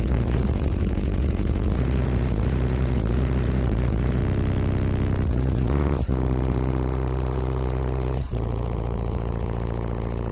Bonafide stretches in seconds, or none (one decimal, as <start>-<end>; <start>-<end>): 4.2-5.3